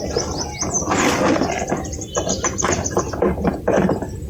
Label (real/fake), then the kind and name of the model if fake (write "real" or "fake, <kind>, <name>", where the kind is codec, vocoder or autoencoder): real